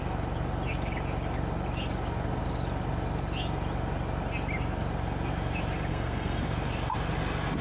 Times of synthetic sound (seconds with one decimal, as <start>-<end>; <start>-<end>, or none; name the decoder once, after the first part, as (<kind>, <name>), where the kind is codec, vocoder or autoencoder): 5.9-6.4 (codec, SNAC)